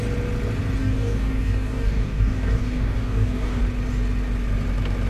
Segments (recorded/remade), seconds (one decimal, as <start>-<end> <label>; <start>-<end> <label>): 0.0-0.8 recorded; 0.8-3.6 remade; 3.6-5.1 recorded